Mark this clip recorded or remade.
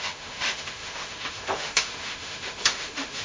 remade